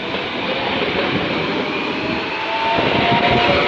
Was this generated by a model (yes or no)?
no